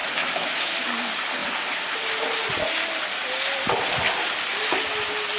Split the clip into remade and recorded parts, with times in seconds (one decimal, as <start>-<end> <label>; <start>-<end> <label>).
0.0-0.8 remade; 0.8-5.4 recorded